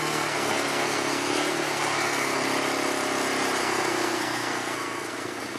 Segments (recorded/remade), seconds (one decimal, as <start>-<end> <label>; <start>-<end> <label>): 0.0-2.4 remade; 2.4-3.6 recorded; 3.6-5.6 remade